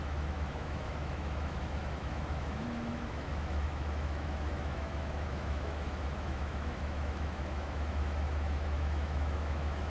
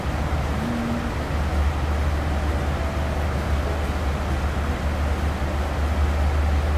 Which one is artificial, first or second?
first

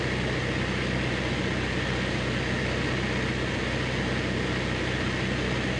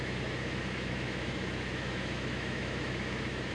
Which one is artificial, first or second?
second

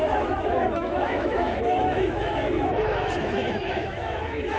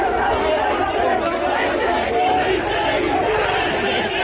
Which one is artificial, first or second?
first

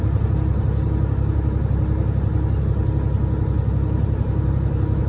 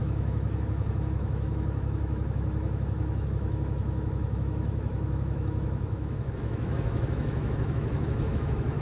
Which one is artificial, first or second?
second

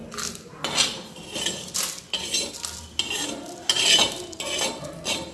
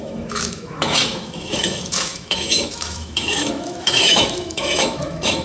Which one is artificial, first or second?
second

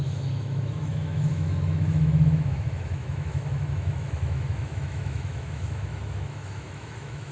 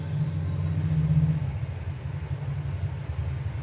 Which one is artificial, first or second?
first